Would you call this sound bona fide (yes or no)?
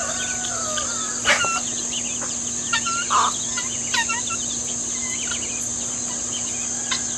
yes